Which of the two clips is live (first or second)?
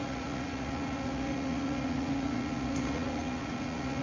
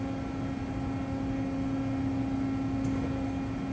second